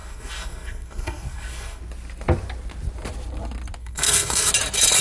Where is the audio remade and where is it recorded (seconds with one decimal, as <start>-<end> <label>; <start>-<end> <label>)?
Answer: 0.0-1.8 remade; 1.8-3.8 recorded; 3.8-4.5 remade; 4.5-5.0 recorded